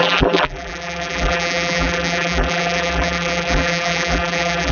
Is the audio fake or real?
fake